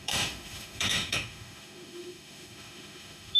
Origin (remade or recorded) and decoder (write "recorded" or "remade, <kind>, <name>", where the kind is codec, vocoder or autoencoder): remade, autoencoder, DAC-VAE